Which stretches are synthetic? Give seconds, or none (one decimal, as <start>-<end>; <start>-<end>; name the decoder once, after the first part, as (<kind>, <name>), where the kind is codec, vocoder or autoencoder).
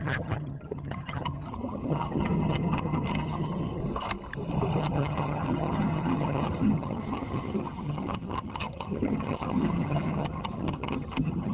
0.0-3.8 (vocoder, HiFi-GAN); 4.8-11.5